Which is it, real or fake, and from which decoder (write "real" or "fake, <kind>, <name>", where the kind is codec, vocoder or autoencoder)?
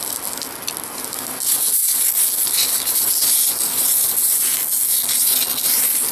real